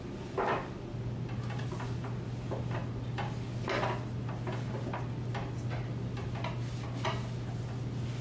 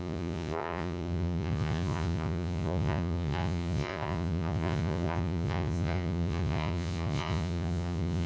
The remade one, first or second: second